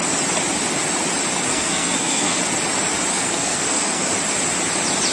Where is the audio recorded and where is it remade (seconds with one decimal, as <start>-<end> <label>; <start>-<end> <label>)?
0.0-1.5 recorded; 1.5-2.4 remade; 2.4-3.1 recorded; 3.1-4.1 remade; 4.1-5.1 recorded